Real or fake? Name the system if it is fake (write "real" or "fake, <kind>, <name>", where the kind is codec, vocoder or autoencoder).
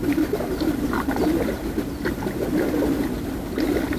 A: real